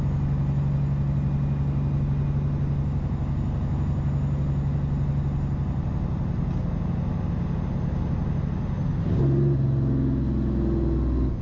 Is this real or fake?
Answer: real